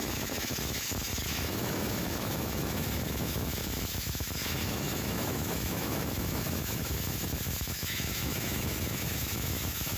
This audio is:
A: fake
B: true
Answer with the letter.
A